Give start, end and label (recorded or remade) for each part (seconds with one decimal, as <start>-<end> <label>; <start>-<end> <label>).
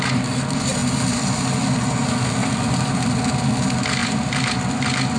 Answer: 0.0-5.2 recorded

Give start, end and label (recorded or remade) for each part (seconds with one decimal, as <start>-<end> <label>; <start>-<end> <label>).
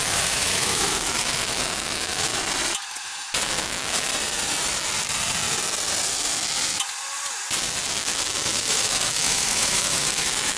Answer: 0.0-2.3 remade; 2.3-3.0 recorded; 3.0-4.1 remade; 4.1-7.9 recorded; 7.9-10.6 remade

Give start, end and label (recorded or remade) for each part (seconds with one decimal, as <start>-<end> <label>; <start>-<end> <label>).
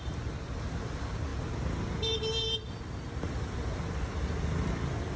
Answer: 0.0-5.2 recorded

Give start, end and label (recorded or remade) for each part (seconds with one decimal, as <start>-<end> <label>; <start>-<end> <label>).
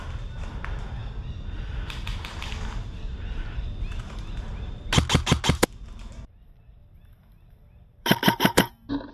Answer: 0.0-6.8 recorded; 6.8-8.6 remade; 8.6-9.1 recorded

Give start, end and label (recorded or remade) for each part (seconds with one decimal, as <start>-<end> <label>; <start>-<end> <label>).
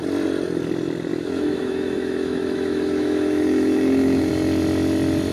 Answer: 0.0-1.1 recorded; 1.1-4.3 remade; 4.3-5.3 recorded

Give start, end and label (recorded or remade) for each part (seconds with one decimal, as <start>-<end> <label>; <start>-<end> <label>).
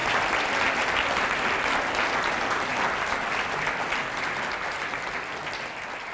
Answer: 0.0-6.1 recorded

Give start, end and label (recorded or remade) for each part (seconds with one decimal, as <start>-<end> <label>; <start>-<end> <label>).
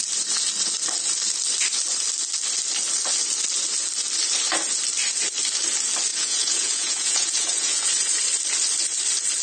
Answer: 0.0-6.1 recorded; 6.1-7.9 remade; 7.9-9.4 recorded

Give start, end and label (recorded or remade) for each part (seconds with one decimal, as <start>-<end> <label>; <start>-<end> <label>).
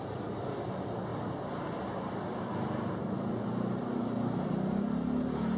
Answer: 0.0-5.6 recorded